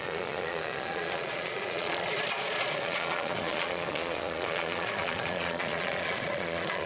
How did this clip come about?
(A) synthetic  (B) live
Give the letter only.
A